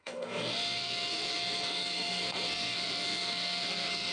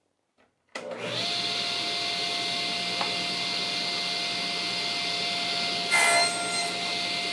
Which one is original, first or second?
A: second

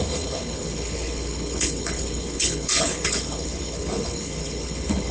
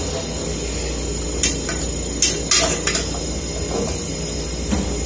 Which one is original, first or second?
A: second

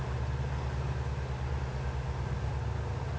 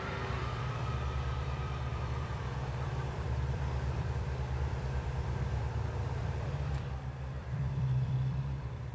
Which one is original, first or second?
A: first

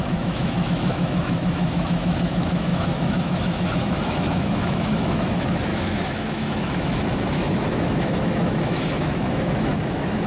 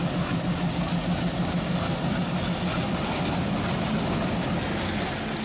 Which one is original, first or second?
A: second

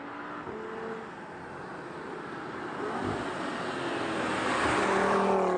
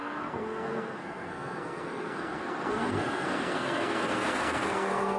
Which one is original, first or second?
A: first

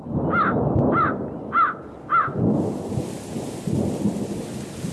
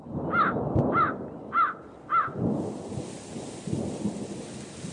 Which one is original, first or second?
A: first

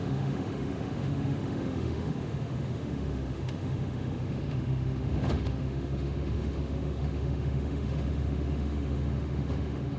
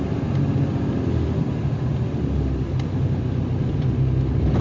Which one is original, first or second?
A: second